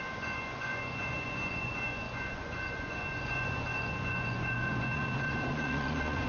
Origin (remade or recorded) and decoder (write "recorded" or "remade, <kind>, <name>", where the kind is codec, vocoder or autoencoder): remade, vocoder, Vocos